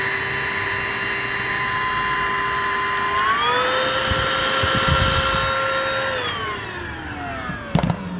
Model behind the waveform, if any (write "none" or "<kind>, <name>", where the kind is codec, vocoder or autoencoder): none